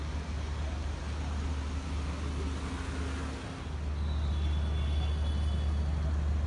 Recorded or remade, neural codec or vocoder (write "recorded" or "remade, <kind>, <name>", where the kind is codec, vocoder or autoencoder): recorded